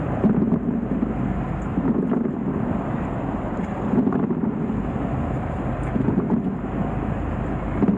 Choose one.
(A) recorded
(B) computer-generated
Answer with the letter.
A